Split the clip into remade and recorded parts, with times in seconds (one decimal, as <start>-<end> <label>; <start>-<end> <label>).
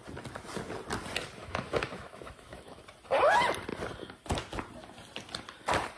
0.0-1.4 recorded; 1.4-2.8 remade; 2.8-6.0 recorded